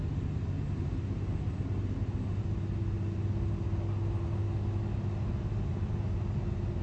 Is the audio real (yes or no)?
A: yes